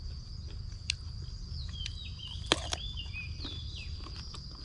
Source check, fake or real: real